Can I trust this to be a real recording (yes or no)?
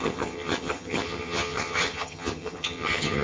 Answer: no